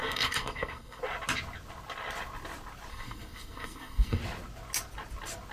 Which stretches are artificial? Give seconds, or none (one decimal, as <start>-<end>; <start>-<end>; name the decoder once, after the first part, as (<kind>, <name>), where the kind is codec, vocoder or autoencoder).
0.0-1.0 (codec, SNAC); 2.9-4.2